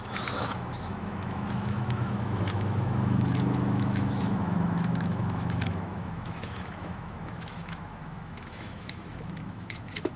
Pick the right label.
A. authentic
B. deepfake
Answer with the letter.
B